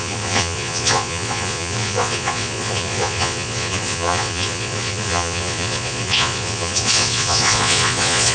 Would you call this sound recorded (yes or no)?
no